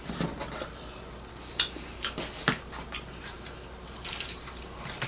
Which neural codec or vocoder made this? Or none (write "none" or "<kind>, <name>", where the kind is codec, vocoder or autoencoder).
none